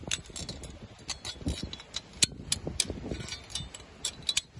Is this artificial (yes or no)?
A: no